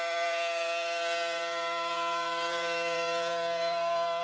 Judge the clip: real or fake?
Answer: fake